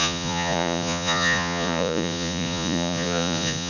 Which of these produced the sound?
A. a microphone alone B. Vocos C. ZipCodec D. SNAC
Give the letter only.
B